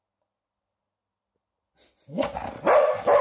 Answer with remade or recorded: recorded